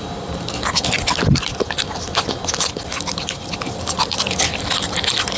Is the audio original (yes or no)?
yes